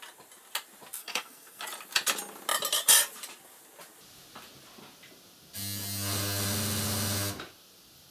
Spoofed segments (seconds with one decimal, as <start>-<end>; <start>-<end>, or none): 1.0-1.6